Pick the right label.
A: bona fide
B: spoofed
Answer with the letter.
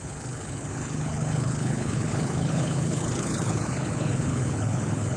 B